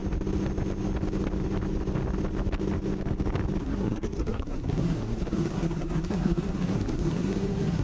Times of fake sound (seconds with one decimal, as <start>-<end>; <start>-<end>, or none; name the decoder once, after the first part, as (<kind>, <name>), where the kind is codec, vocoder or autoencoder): 3.6-7.8 (codec, SNAC)